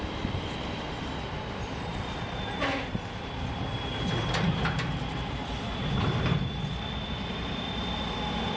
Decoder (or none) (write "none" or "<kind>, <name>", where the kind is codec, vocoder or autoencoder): vocoder, BigVGAN v2